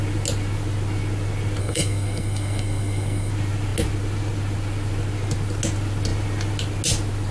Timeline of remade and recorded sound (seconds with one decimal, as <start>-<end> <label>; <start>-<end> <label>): 0.0-1.6 recorded; 1.6-3.3 remade; 3.3-7.3 recorded